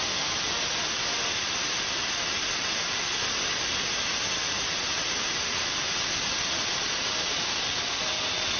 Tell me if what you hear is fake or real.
real